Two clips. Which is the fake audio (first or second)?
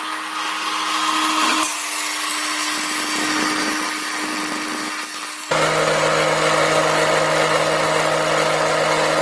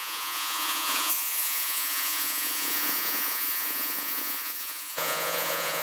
second